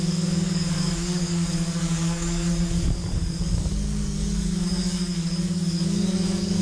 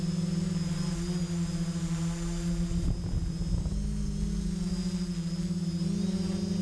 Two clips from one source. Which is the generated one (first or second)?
first